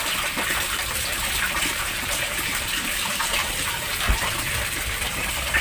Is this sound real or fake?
fake